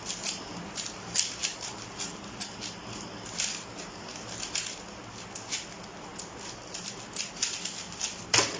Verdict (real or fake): real